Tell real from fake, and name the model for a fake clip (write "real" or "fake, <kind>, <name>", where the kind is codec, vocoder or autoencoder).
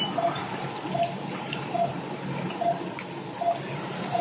real